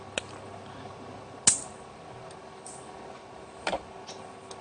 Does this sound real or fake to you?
real